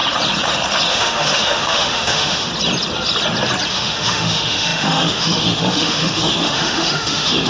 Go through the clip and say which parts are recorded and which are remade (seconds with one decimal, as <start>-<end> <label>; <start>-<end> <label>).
0.0-0.9 recorded; 0.9-2.5 remade; 2.5-3.7 recorded; 3.7-7.5 remade

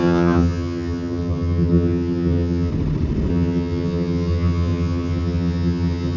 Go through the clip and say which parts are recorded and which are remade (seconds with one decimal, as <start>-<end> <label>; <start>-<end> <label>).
0.0-2.7 remade; 2.7-3.3 recorded; 3.3-6.2 remade

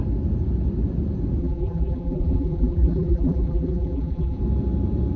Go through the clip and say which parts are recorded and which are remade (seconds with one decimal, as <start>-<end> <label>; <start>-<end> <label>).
0.0-1.4 recorded; 1.4-4.4 remade; 4.4-5.2 recorded

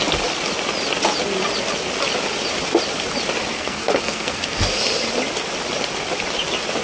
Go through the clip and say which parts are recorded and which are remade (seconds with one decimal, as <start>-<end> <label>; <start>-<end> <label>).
0.0-3.5 recorded; 3.5-4.8 remade; 4.8-6.8 recorded

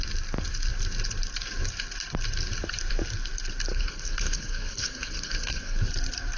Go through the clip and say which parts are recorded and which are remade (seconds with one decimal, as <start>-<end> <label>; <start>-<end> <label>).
0.0-3.7 recorded; 3.7-5.9 remade; 5.9-6.4 recorded

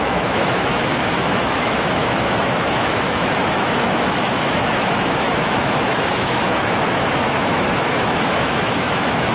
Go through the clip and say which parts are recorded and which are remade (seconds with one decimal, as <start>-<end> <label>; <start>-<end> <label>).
0.0-9.3 remade